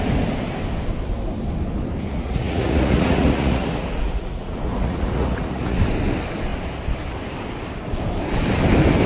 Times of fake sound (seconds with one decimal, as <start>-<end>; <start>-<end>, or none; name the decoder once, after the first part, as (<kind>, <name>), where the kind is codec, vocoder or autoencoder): 2.1-5.8 (vocoder, Vocos)